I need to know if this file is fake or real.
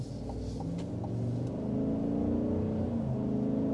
real